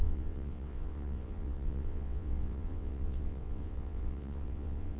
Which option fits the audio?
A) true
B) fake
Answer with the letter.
B